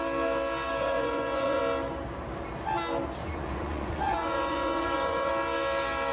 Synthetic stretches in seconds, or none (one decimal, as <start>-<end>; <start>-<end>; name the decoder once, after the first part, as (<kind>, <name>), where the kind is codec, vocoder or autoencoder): 0.8-1.6 (vocoder, Vocos); 3.2-5.3